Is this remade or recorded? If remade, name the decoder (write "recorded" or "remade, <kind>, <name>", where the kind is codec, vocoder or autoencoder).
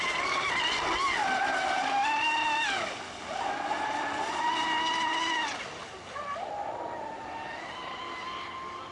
recorded